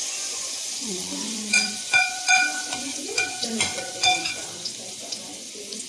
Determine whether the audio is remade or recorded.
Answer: remade